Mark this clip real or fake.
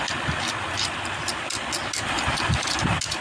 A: real